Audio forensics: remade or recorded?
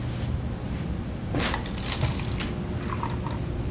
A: recorded